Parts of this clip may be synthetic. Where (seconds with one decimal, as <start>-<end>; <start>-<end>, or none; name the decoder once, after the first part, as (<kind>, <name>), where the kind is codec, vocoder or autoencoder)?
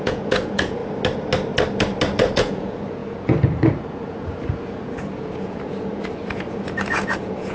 0.0-0.8 (vocoder, Vocos); 2.2-7.5